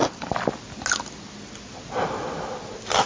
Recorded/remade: recorded